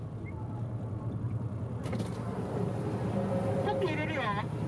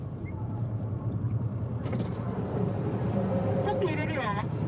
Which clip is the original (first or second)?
first